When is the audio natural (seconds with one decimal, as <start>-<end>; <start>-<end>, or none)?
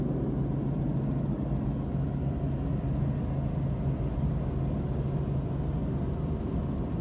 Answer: 0.0-7.0